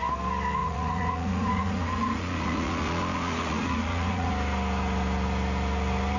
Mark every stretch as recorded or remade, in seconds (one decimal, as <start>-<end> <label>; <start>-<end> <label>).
0.0-0.6 recorded; 0.6-4.3 remade; 4.3-6.2 recorded